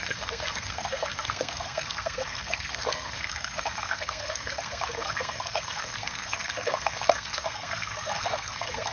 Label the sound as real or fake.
fake